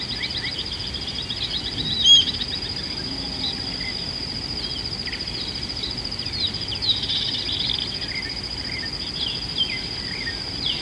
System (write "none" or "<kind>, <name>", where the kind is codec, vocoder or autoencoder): none